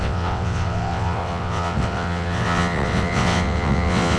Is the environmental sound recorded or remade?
remade